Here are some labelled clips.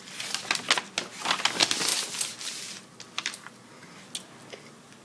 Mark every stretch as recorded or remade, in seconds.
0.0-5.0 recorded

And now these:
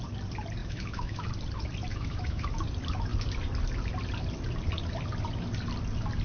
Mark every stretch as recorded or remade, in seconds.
0.0-0.6 recorded; 0.6-1.3 remade; 1.3-1.9 recorded; 1.9-2.6 remade; 2.6-6.2 recorded

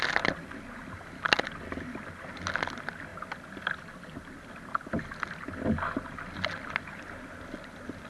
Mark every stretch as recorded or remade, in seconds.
0.0-8.1 recorded